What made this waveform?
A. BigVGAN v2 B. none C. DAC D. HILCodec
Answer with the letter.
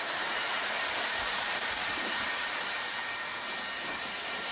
A